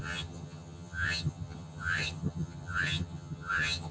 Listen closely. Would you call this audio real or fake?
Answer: fake